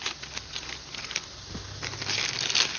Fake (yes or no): no